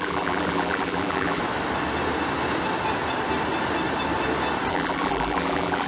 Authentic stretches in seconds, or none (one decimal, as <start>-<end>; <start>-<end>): 1.4-4.7